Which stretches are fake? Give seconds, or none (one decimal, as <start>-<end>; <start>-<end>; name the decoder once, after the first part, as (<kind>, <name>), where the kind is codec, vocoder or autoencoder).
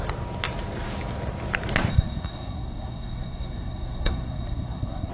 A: 1.9-5.1 (codec, SNAC)